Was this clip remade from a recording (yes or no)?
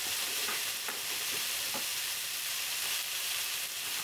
yes